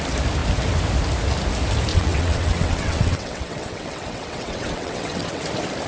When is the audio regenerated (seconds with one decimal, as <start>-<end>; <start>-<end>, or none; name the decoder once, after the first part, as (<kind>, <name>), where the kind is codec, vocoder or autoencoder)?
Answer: 1.9-5.4 (vocoder, WaveNeXt)